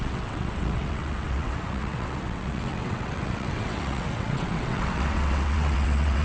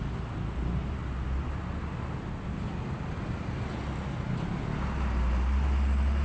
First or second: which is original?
second